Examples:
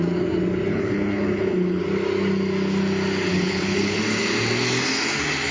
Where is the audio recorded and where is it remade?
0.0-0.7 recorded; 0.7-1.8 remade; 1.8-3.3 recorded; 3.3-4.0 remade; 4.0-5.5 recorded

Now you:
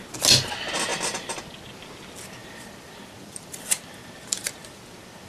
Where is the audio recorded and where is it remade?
0.0-0.9 recorded; 0.9-1.4 remade; 1.4-2.4 recorded; 2.4-5.3 remade

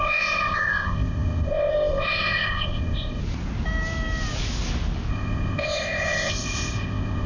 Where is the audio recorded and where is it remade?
0.0-3.2 remade; 3.2-5.1 recorded; 5.1-7.3 remade

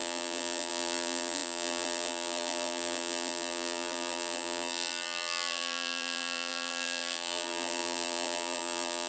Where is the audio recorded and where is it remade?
0.0-9.1 remade

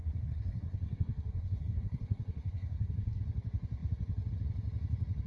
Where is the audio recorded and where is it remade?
0.0-3.2 remade; 3.2-5.3 recorded

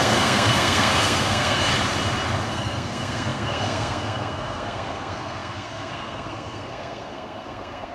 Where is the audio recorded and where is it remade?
0.0-1.7 remade; 1.7-2.5 recorded; 2.5-7.9 remade

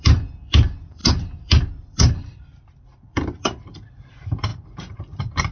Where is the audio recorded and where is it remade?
0.0-5.5 remade

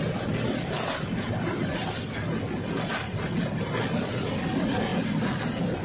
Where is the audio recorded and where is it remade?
0.0-5.8 recorded